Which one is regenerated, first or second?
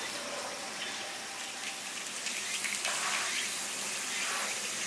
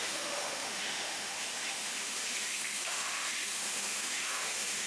second